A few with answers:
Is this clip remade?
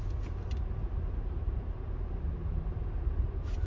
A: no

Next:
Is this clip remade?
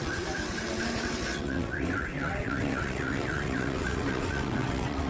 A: yes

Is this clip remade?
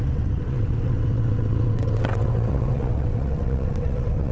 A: yes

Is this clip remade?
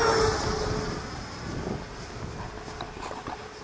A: no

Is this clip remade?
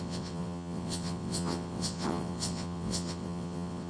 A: yes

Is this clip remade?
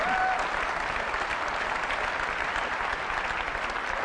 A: no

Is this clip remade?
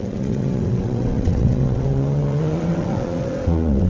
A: yes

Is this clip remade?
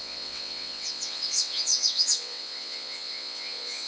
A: yes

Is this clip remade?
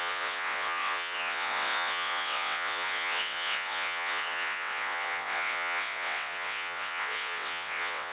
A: yes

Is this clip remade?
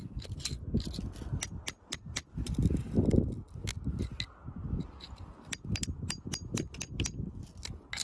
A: no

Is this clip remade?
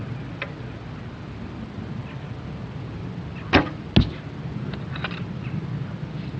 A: no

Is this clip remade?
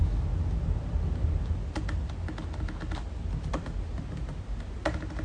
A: no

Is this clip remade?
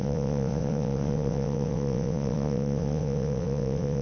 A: yes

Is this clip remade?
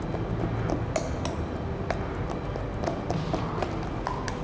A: no